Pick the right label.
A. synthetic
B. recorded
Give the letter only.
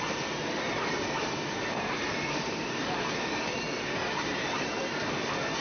A